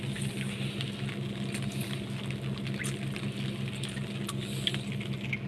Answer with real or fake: real